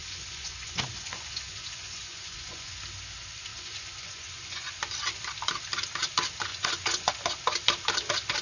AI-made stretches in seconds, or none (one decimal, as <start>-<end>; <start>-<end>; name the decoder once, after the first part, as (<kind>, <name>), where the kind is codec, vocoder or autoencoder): 0.0-2.8 (vocoder, Vocos); 3.5-4.8; 6.5-7.1

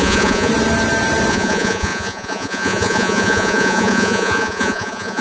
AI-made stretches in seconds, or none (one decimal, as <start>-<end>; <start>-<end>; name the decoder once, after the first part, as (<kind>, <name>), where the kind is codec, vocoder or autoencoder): 0.0-0.5 (vocoder, Vocos); 1.3-5.2

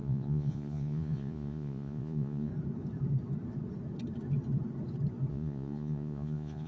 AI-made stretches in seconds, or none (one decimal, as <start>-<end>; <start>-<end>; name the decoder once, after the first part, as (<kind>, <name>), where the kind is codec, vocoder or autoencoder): 0.0-2.5 (vocoder, Vocos); 5.3-6.7

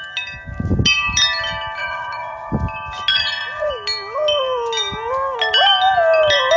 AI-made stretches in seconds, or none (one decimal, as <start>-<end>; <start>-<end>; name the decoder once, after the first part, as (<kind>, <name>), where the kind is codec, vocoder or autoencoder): 1.8-2.5 (vocoder, Vocos); 3.1-3.7